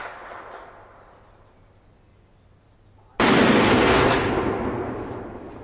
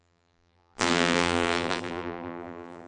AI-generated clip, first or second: second